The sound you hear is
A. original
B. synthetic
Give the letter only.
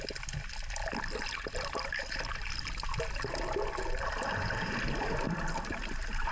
A